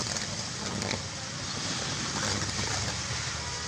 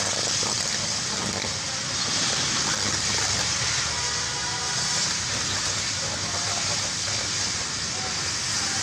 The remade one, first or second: first